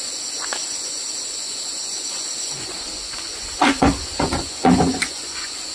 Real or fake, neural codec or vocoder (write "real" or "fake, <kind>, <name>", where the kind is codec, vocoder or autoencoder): fake, vocoder, Vocos